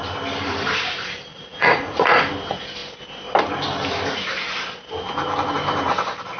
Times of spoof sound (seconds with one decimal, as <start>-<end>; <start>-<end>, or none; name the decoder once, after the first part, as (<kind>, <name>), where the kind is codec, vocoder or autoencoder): 1.3-2.2 (vocoder, Vocos)